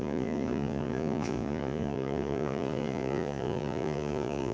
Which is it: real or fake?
fake